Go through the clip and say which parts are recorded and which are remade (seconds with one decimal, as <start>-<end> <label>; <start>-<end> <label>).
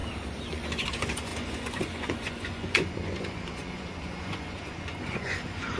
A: 0.0-0.5 recorded; 0.5-5.8 remade